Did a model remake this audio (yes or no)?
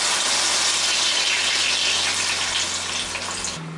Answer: no